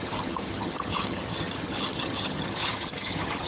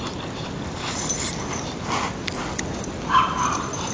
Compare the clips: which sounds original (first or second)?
second